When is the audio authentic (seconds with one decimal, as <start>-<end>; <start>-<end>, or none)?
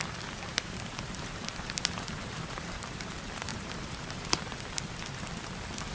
0.0-0.5; 3.1-3.5; 4.4-5.9